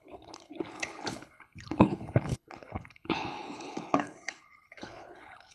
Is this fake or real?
fake